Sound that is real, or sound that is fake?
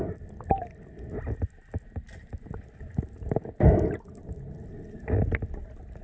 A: real